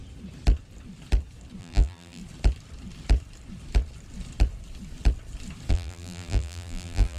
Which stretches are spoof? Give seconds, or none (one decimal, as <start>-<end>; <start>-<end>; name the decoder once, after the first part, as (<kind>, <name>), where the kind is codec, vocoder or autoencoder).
1.6-2.2 (vocoder, BigVGAN v2); 5.7-7.2